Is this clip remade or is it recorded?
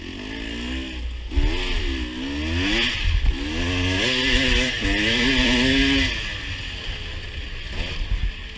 recorded